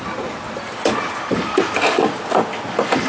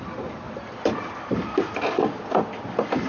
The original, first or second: first